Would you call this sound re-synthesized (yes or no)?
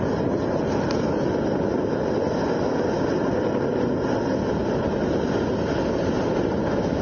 no